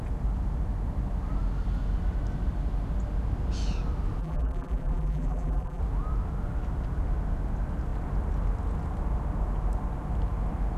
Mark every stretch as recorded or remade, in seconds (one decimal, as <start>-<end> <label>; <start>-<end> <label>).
0.0-4.2 recorded; 4.2-5.8 remade; 5.8-10.8 recorded